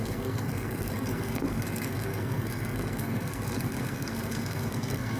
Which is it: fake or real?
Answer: fake